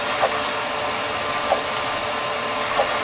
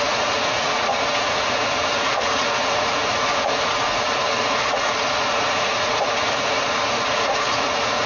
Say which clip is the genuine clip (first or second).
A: first